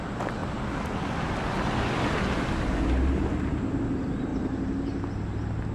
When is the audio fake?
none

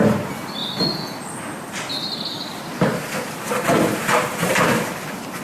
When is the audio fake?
0.0-0.6 (vocoder, BigVGAN v2); 3.3-5.4

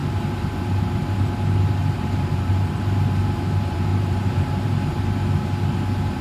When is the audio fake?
1.8-2.8 (vocoder, BigVGAN v2); 3.9-5.0

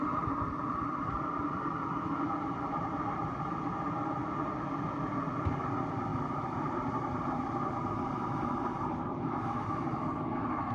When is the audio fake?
0.0-4.2 (vocoder, BigVGAN v2); 5.3-10.7

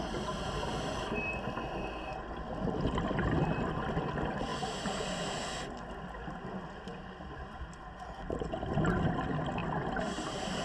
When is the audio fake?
none

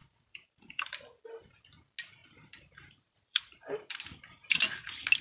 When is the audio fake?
0.0-1.0 (vocoder, BigVGAN v2); 2.2-3.7

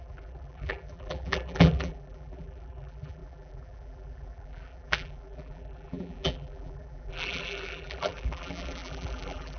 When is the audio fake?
0.0-9.6 (vocoder, BigVGAN v2)

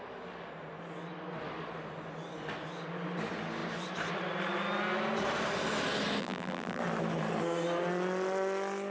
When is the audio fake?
6.2-6.8 (vocoder, BigVGAN v2)